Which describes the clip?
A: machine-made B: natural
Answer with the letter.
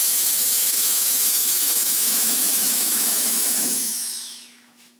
A